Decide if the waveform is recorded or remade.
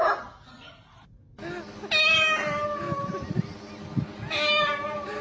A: recorded